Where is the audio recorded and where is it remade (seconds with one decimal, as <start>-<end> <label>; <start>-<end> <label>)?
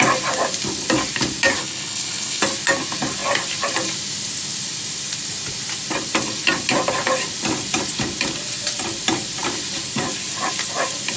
0.0-1.6 recorded; 1.6-2.4 remade; 2.4-11.2 recorded